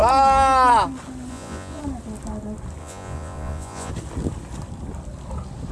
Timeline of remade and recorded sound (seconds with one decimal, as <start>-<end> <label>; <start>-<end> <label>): 0.0-1.3 recorded; 1.3-1.8 remade; 1.8-2.8 recorded; 2.8-3.9 remade; 3.9-5.7 recorded